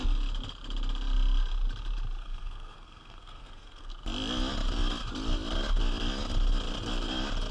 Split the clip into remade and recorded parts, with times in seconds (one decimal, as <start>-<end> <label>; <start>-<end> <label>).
0.0-2.2 recorded; 2.2-3.9 remade; 3.9-7.5 recorded